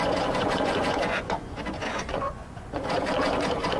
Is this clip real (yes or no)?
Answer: no